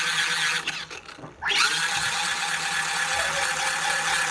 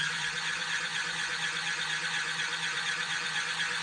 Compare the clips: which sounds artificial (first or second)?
second